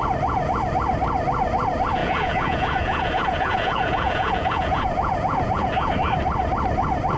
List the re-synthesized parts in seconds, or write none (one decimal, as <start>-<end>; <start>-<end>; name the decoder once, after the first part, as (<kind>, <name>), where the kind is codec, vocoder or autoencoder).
2.0-5.9 (vocoder, Vocos)